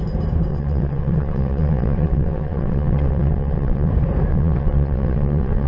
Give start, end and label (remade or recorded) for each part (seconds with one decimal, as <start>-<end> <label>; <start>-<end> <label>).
0.0-0.5 recorded; 0.5-3.9 remade; 3.9-4.3 recorded; 4.3-5.7 remade